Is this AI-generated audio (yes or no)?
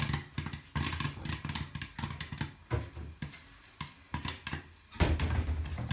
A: no